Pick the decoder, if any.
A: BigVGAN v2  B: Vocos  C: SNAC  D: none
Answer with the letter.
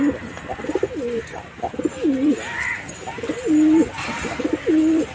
A